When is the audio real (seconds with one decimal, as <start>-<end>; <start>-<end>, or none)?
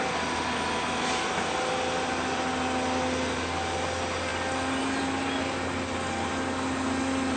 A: 0.0-7.4